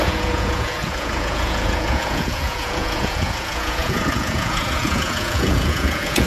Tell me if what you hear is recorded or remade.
remade